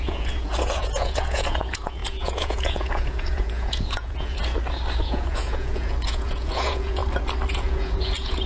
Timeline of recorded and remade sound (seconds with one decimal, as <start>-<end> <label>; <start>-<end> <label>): 0.0-4.4 remade; 4.4-5.0 recorded; 5.0-7.0 remade; 7.0-7.5 recorded; 7.5-8.5 remade